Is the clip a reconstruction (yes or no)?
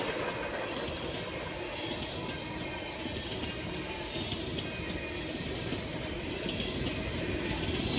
no